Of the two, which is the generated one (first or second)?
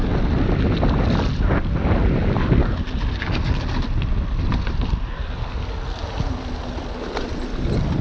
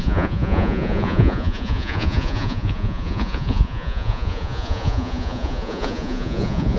second